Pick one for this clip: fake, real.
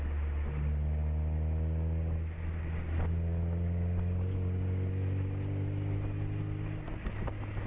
real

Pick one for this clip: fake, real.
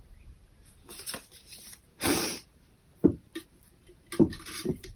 fake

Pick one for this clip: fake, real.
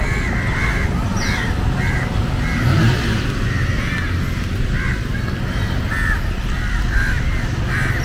real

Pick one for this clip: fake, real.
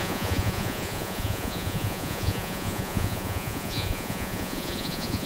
fake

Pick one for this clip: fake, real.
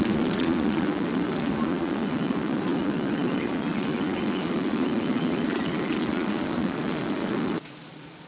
fake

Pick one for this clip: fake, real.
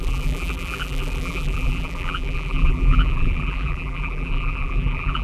fake